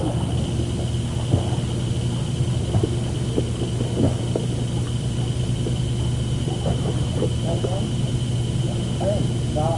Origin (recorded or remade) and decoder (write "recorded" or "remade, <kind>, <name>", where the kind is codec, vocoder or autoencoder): recorded